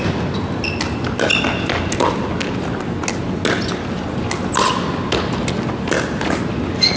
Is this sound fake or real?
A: real